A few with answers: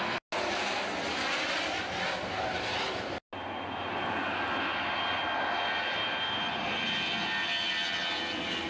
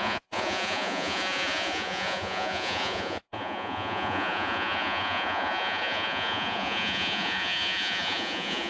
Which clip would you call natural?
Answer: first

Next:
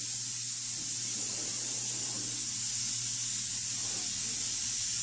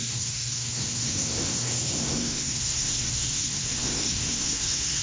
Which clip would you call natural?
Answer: first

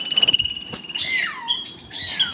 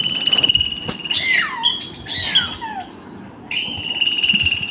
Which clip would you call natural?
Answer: second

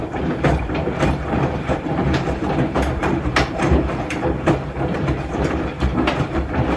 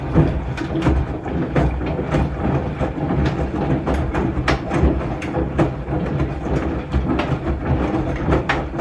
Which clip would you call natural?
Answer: second